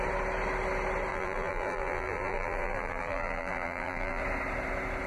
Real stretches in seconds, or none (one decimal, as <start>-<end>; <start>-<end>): 0.0-1.1; 4.2-5.1